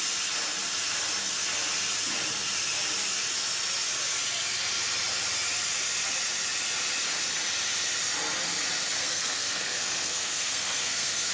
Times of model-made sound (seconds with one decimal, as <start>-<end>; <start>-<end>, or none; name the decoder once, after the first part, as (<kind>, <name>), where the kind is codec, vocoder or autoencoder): 9.0-11.3 (codec, SNAC)